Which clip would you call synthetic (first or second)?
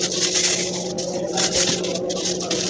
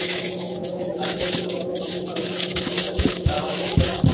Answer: second